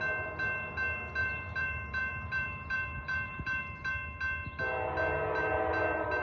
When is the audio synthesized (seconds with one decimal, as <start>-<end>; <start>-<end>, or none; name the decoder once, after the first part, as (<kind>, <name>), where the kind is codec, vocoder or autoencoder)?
1.2-3.9 (vocoder, BigVGAN v2)